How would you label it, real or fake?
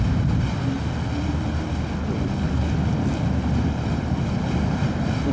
real